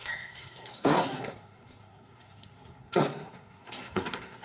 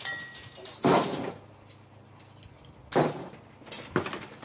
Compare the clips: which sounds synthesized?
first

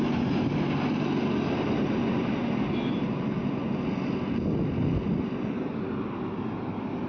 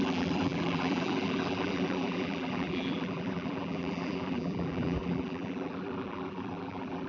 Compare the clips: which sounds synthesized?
second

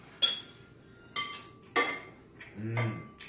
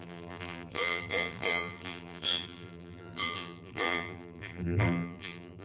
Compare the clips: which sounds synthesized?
second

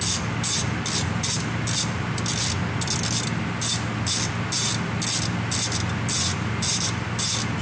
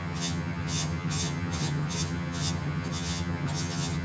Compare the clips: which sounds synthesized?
second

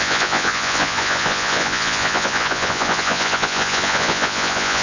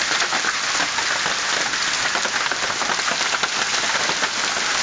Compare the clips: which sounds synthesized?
first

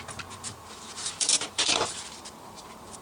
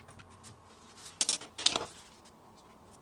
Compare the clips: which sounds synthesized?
first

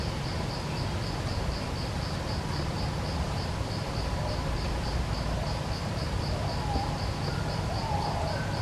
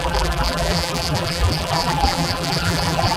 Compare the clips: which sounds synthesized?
second